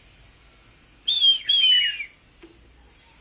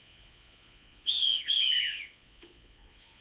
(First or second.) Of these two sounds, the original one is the first